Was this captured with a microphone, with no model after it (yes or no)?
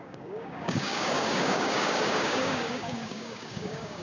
no